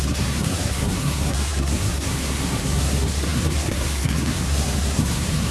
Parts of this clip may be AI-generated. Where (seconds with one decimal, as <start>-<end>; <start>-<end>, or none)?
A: 0.0-5.5